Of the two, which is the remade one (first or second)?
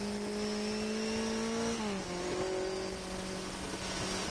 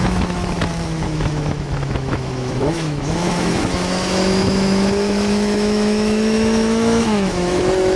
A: second